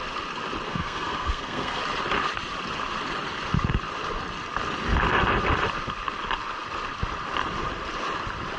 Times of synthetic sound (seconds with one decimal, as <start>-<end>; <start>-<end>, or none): 0.7-1.8